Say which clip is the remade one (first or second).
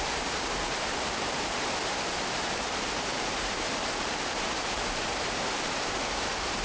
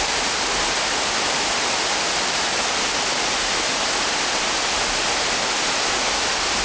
first